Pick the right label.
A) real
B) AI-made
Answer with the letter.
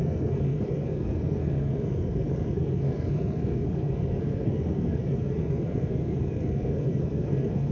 B